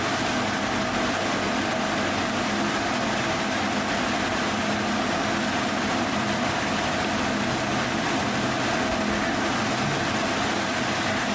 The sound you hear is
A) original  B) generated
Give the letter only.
A